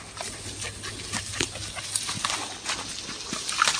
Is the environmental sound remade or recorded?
recorded